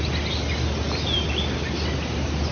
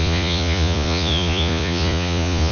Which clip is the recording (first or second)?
first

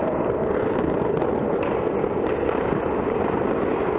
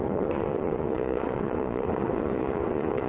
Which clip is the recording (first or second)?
first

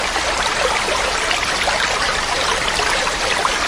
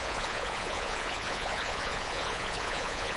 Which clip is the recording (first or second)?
first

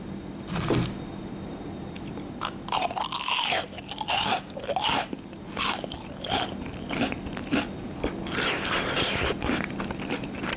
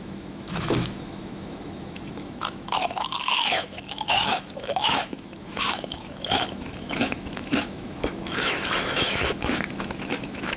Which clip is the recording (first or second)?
first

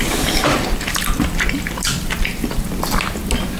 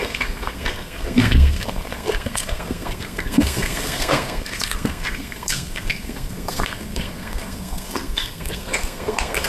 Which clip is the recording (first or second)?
first